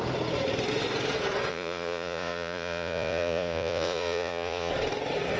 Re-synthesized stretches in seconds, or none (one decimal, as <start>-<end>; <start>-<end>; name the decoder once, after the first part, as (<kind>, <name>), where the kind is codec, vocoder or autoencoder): 1.5-4.7 (vocoder, Vocos)